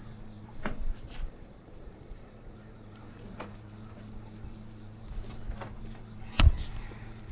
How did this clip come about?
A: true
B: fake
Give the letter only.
B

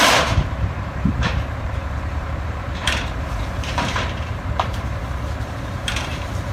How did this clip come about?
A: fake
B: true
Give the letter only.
A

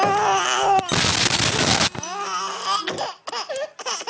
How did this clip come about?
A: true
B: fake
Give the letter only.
A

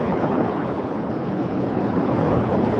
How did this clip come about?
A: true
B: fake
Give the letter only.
B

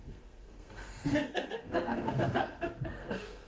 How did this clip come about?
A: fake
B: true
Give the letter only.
A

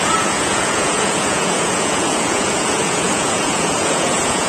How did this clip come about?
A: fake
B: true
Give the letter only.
A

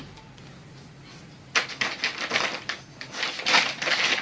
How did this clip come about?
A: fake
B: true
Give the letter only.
B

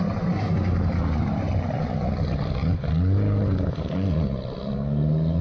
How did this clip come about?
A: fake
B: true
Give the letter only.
B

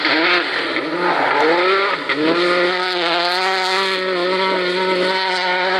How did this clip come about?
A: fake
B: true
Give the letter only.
B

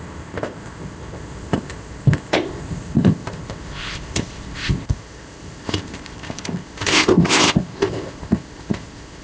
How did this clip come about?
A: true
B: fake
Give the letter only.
B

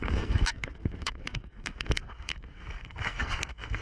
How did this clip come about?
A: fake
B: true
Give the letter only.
A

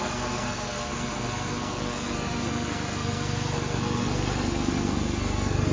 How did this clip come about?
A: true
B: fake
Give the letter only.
B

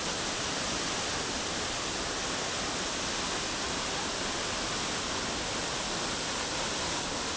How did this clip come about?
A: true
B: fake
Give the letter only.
A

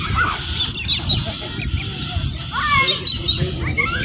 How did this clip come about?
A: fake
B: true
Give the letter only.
B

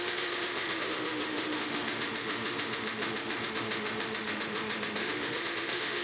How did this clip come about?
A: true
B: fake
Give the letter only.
B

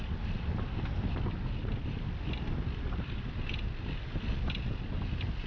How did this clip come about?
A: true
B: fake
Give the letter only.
A